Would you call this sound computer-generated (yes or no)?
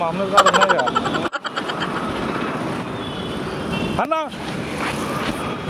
no